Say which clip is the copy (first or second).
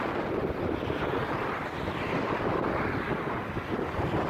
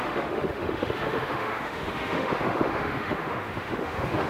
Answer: second